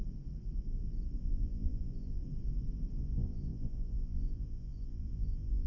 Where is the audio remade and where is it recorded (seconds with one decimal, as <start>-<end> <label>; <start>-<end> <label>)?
0.0-1.2 recorded; 1.2-2.2 remade; 2.2-3.0 recorded; 3.0-5.7 remade